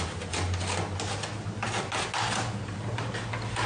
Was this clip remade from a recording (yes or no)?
no